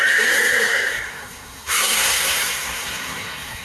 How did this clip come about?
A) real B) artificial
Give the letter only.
B